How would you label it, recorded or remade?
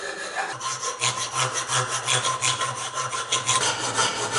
recorded